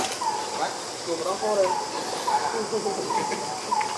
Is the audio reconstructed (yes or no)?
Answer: no